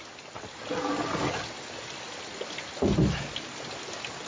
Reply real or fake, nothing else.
real